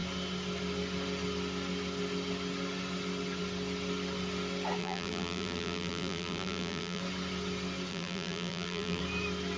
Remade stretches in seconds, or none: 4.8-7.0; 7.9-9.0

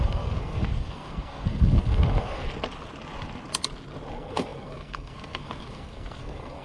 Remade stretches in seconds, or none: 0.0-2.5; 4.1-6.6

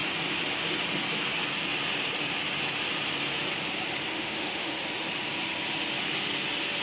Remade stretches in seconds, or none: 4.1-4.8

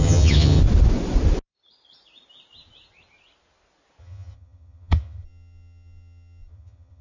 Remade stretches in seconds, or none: 0.0-0.6; 4.0-7.0

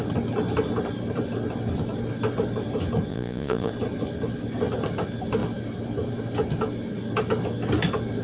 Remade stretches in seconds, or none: 3.1-3.7